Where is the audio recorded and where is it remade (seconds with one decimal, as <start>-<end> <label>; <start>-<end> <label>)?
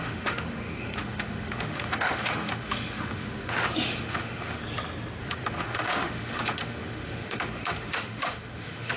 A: 0.0-4.6 remade; 4.6-5.2 recorded; 5.2-9.0 remade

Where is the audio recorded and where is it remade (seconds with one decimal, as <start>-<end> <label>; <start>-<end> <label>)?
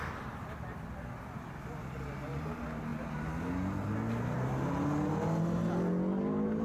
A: 0.0-6.6 recorded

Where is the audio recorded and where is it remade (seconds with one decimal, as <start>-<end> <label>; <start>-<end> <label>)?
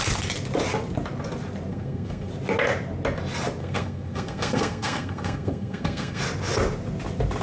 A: 0.0-1.7 recorded; 1.7-2.3 remade; 2.3-3.6 recorded; 3.6-6.2 remade; 6.2-7.4 recorded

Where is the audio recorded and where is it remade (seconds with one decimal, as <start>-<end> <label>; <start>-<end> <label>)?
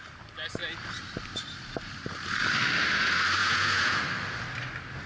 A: 0.0-3.4 recorded; 3.4-4.0 remade; 4.0-5.1 recorded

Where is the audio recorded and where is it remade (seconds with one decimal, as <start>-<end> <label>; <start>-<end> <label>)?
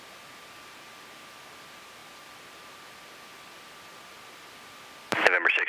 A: 0.0-5.7 recorded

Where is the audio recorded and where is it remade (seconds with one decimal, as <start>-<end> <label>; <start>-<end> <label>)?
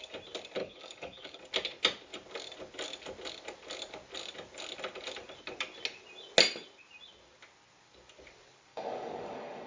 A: 0.0-0.6 recorded; 0.6-1.4 remade; 1.4-8.7 recorded; 8.7-9.7 remade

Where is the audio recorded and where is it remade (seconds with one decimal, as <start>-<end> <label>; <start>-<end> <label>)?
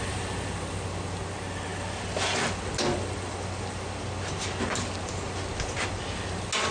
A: 0.0-6.7 recorded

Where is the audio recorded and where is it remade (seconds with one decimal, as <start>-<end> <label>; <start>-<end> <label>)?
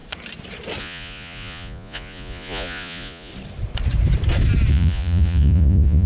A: 0.0-0.8 recorded; 0.8-3.3 remade; 3.3-4.7 recorded; 4.7-6.1 remade